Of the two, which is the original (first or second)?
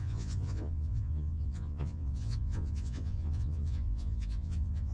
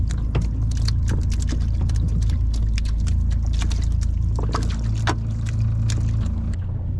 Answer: second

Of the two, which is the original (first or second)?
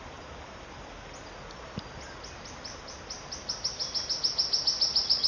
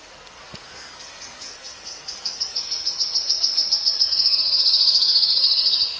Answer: first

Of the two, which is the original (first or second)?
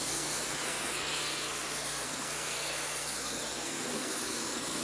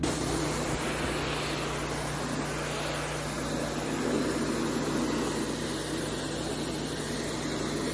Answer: second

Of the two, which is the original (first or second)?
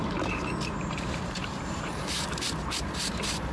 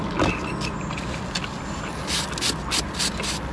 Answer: second